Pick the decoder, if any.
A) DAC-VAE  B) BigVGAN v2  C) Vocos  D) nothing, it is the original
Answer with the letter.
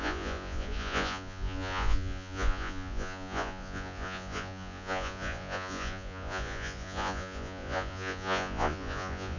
C